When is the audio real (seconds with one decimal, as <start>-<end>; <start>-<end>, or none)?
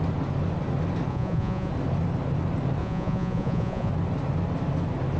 0.0-1.1; 1.7-2.8; 3.9-5.2